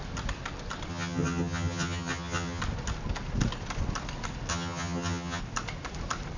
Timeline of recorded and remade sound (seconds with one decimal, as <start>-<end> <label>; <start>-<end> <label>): 0.0-0.9 recorded; 0.9-2.6 remade; 2.6-4.5 recorded; 4.5-5.4 remade; 5.4-6.4 recorded